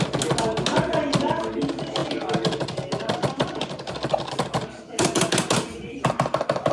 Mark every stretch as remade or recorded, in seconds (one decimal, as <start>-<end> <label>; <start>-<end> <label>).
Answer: 0.0-6.7 recorded